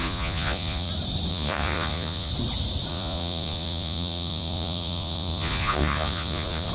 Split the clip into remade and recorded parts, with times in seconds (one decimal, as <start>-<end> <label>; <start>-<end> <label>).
0.0-0.9 remade; 0.9-1.3 recorded; 1.3-2.3 remade; 2.3-2.9 recorded; 2.9-6.7 remade